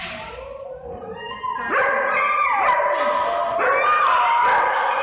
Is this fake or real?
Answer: real